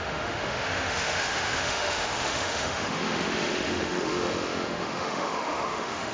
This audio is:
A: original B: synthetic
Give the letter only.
B